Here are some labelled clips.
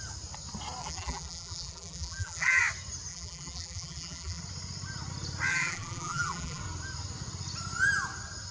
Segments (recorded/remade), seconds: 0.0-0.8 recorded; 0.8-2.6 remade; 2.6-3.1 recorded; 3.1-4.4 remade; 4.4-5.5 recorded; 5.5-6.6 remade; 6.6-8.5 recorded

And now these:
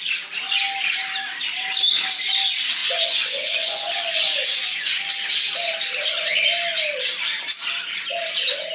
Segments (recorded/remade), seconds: 0.0-2.8 recorded; 2.8-5.2 remade; 5.2-8.7 recorded

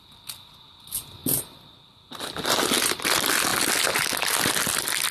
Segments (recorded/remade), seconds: 0.0-5.1 recorded

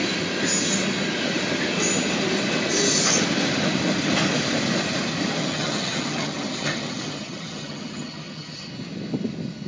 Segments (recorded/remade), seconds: 0.0-5.4 recorded; 5.4-8.7 remade; 8.7-9.7 recorded

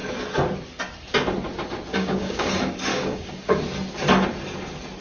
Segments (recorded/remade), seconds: 0.0-1.9 recorded; 1.9-2.5 remade; 2.5-2.9 recorded; 2.9-3.6 remade; 3.6-5.0 recorded

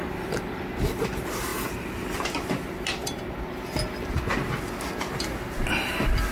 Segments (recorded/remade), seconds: 0.0-6.3 recorded

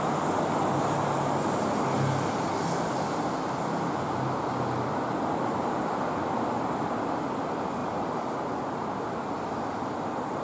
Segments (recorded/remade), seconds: 0.0-7.8 recorded; 7.8-8.3 remade; 8.3-10.4 recorded

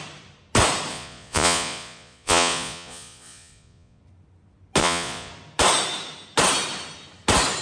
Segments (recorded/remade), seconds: 0.0-0.9 recorded; 0.9-4.0 remade; 4.0-4.8 recorded; 4.8-5.3 remade; 5.3-7.6 recorded